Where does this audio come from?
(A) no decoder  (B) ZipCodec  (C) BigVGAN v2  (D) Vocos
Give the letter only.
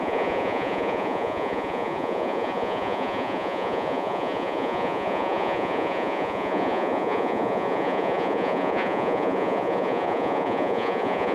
D